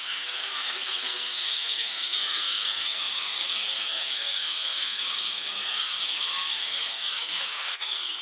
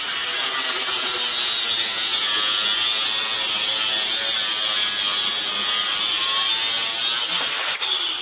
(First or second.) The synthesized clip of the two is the first